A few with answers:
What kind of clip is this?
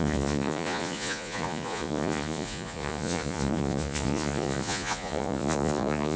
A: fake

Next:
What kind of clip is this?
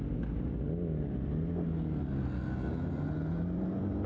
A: real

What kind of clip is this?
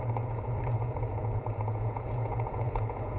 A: fake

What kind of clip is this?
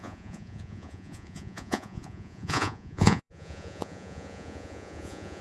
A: fake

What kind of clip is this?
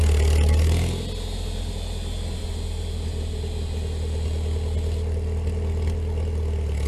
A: real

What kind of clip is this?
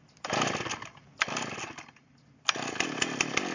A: real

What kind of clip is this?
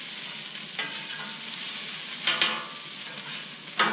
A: real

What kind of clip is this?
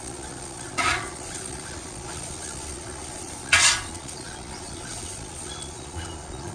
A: fake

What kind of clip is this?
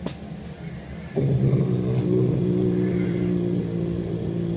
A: real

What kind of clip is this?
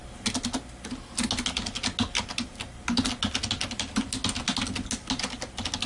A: real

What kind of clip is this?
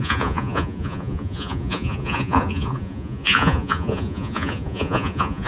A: fake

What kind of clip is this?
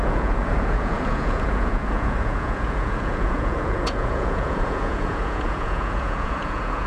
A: fake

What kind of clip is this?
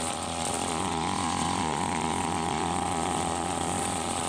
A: fake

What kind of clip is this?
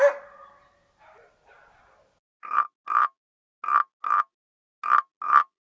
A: real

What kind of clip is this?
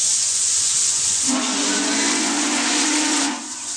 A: fake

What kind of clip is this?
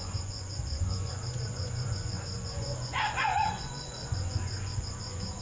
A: fake